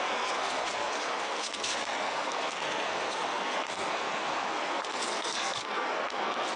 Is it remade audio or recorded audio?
remade